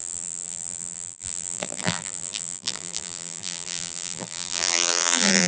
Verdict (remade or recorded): remade